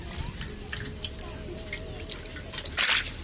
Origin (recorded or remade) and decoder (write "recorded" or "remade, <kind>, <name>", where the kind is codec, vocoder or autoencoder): recorded